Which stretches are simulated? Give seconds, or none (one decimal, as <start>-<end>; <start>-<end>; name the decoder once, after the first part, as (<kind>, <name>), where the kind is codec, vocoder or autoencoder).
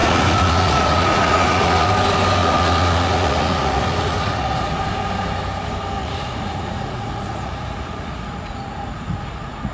0.0-1.9 (vocoder, Vocos); 2.4-4.8; 6.0-9.7